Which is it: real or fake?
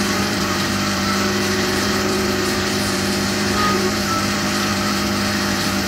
fake